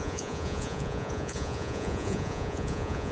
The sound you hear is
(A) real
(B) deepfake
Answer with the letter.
B